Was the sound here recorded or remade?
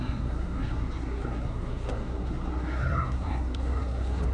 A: remade